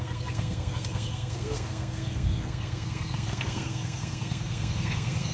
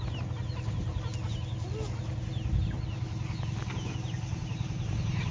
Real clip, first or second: second